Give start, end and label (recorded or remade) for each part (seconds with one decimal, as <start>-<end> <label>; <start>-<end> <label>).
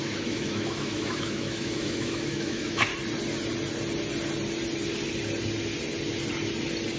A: 0.0-2.9 remade; 2.9-7.0 recorded